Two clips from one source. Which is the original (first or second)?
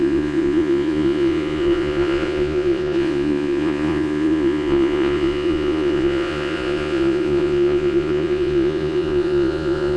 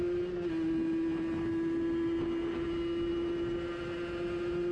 second